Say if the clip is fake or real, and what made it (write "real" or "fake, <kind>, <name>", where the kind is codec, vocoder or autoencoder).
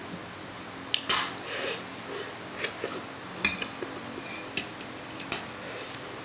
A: real